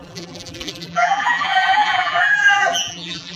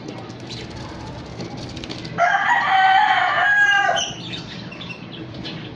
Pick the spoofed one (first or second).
first